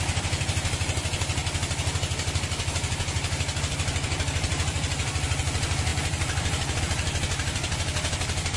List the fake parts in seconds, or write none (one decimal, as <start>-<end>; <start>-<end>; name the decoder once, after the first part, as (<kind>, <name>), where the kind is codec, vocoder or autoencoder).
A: 0.0-1.4 (vocoder, BigVGAN v2); 3.6-8.6